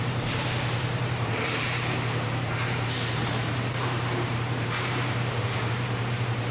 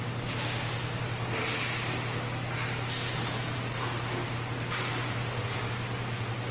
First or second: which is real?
second